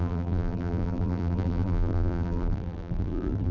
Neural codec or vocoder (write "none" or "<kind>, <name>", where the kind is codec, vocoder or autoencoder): vocoder, BigVGAN v2